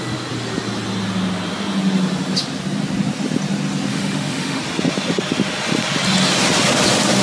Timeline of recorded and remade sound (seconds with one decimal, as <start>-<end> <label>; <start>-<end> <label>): 0.0-3.9 recorded; 3.9-4.6 remade; 4.6-7.2 recorded